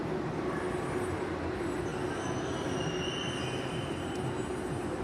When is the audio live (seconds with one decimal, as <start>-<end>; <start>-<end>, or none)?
0.0-5.0